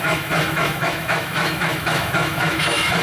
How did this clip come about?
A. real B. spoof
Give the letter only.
B